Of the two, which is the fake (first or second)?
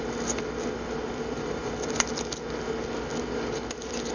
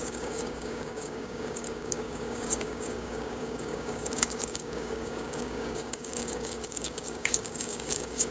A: second